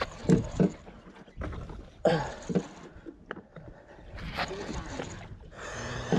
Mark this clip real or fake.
real